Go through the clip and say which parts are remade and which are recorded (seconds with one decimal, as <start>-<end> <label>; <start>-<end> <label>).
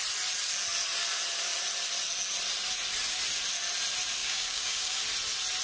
0.0-4.2 recorded; 4.2-5.0 remade; 5.0-5.6 recorded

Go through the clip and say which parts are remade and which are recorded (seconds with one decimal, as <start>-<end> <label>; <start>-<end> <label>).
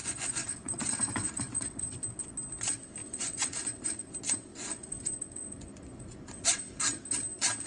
0.0-2.0 remade; 2.0-3.0 recorded; 3.0-4.1 remade; 4.1-4.5 recorded; 4.5-6.6 remade; 6.6-7.7 recorded